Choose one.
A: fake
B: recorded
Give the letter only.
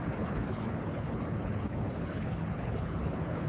A